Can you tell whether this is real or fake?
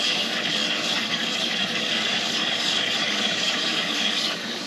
fake